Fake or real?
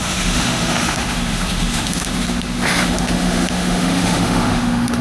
fake